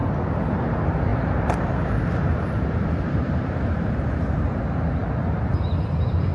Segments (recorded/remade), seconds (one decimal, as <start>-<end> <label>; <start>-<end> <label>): 0.0-1.1 recorded; 1.1-4.6 remade; 4.6-6.3 recorded